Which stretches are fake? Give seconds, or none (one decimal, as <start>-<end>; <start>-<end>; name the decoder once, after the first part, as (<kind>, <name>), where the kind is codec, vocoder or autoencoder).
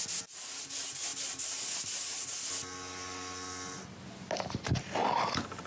1.1-2.3 (vocoder, BigVGAN v2); 5.0-5.7